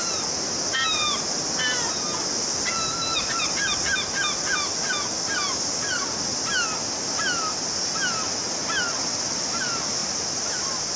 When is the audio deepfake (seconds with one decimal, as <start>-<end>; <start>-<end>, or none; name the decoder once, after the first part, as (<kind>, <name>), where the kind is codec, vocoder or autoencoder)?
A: none